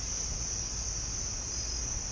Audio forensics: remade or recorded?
recorded